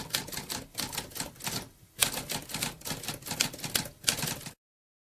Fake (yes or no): no